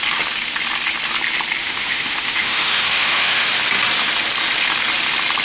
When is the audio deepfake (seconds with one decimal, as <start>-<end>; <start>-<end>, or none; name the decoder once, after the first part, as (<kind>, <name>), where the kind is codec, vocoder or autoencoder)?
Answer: 1.6-3.5 (autoencoder, DAC-VAE)